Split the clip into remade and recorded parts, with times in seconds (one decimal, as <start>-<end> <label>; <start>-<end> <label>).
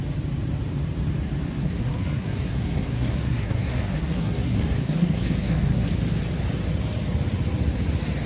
0.0-1.6 recorded; 1.6-5.9 remade; 5.9-8.3 recorded